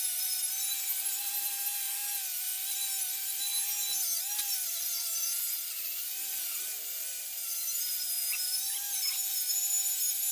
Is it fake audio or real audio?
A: real